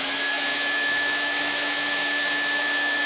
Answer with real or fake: fake